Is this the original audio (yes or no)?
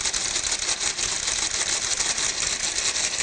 yes